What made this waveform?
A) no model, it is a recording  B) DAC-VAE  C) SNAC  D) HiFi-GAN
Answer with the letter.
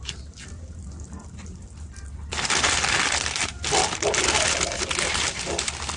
A